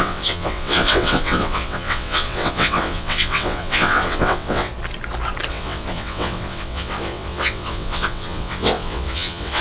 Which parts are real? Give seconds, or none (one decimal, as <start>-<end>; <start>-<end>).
4.7-5.5